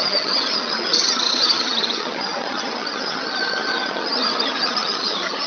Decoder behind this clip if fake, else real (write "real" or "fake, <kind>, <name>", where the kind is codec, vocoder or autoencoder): fake, vocoder, HiFi-GAN